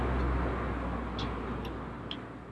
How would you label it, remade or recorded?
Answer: recorded